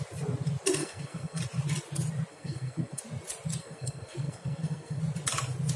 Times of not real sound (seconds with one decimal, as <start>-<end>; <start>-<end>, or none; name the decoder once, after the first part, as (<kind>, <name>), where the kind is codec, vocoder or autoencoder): 0.8-1.4 (codec, SNAC); 2.3-3.0; 3.6-5.0